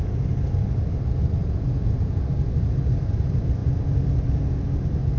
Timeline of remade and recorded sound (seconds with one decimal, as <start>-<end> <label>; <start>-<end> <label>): 0.0-1.4 recorded; 1.4-2.2 remade; 2.2-5.2 recorded